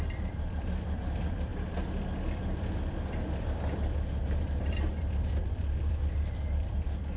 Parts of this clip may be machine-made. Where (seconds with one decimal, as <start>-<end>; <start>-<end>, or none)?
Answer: 0.0-1.5; 3.3-7.2